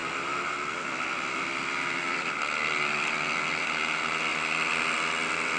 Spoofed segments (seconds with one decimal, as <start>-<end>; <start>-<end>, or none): none